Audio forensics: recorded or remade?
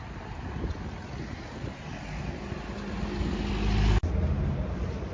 recorded